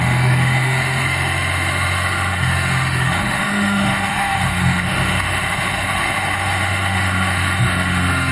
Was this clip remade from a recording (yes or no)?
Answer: yes